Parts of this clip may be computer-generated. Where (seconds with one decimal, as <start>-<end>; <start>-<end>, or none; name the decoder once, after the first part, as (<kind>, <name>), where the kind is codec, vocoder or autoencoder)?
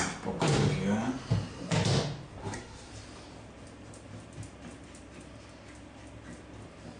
2.4-2.9 (codec, SNAC)